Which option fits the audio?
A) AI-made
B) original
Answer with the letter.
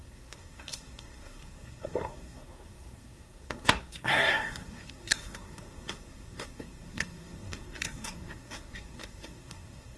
A